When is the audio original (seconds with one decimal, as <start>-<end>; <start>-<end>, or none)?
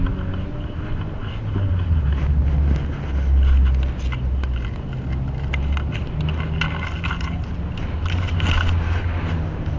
0.0-9.8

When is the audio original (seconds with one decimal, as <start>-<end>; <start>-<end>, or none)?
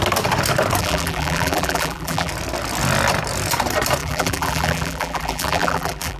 0.0-0.8; 2.3-4.0